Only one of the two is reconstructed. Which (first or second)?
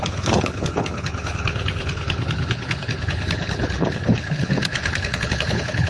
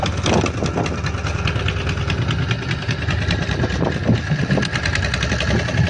first